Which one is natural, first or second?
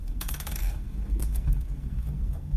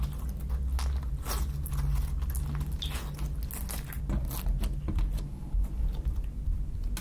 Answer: second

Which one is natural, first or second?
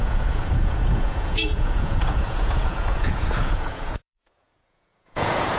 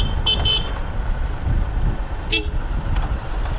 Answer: second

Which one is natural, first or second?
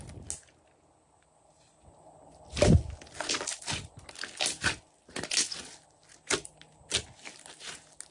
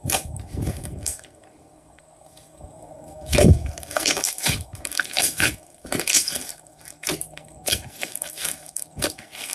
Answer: first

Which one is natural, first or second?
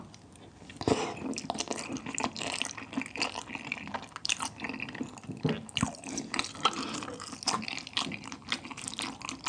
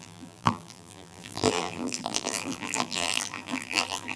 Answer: first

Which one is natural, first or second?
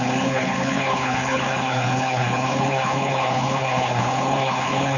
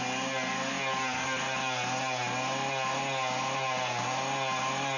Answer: second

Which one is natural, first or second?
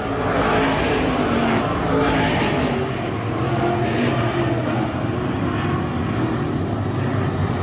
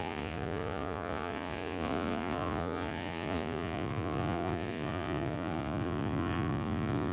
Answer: first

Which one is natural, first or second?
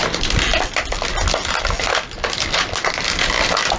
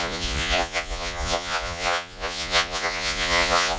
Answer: first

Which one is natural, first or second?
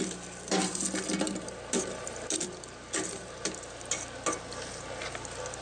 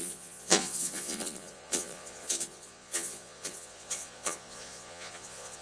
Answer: first